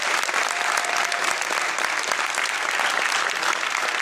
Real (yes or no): yes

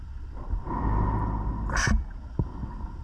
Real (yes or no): yes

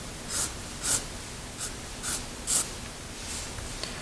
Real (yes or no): yes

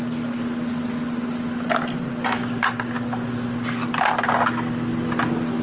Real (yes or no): yes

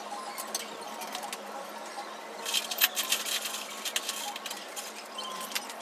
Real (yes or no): yes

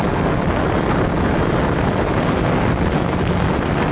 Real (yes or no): yes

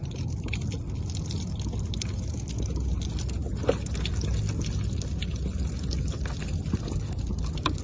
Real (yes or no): yes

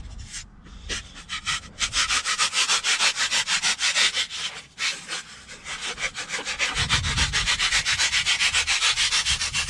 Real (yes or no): yes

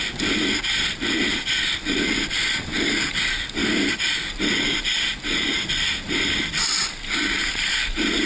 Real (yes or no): yes